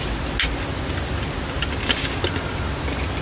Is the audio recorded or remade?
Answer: recorded